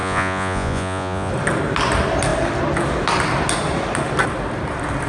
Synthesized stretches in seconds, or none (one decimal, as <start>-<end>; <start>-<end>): 0.0-1.3